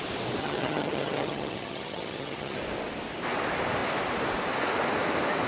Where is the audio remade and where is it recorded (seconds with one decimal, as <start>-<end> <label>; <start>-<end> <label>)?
0.0-0.4 recorded; 0.4-2.6 remade; 2.6-5.5 recorded